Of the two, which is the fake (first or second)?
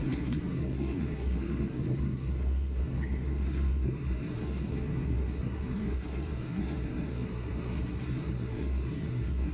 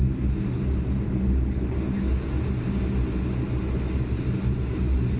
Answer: first